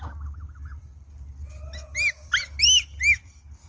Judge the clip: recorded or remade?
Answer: recorded